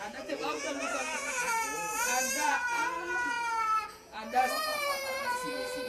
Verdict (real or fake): fake